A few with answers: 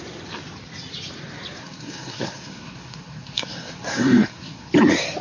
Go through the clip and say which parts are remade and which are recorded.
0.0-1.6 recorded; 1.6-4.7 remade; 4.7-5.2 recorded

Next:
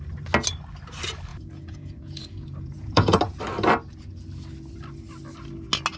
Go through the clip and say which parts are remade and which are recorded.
0.0-1.3 recorded; 1.3-3.2 remade; 3.2-6.0 recorded

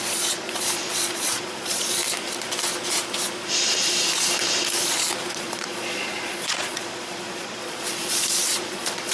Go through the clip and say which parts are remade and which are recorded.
0.0-2.0 remade; 2.0-5.3 recorded; 5.3-9.1 remade